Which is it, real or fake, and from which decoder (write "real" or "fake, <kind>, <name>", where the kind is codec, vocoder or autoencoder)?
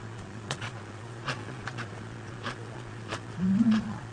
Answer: fake, vocoder, Vocos